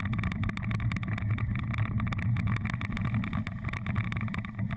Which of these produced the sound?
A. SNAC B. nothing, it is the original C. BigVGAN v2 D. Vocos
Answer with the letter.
B